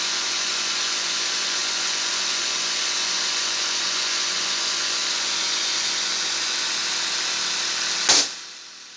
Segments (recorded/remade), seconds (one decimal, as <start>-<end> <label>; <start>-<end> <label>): 0.0-6.8 remade; 6.8-9.0 recorded